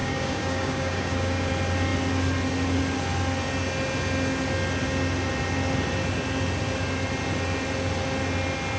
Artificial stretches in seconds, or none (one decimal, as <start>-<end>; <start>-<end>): 0.0-1.5